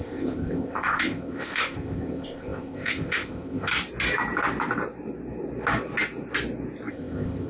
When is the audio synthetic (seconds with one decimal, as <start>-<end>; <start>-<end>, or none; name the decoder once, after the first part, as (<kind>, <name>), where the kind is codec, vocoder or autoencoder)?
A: 0.0-3.7 (codec, ZipCodec); 6.9-7.5